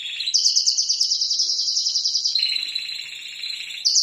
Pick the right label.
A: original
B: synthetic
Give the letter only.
A